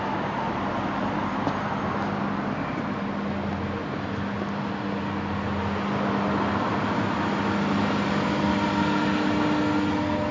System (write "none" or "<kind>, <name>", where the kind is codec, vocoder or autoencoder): none